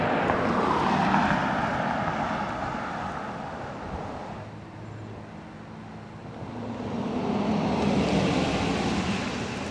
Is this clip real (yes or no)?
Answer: yes